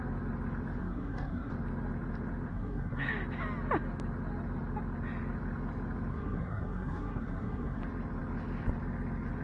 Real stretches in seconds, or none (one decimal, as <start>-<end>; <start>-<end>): 0.0-0.8; 1.5-2.5; 3.1-6.1; 7.8-9.4